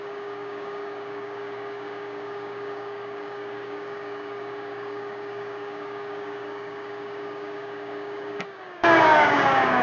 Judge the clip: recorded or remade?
remade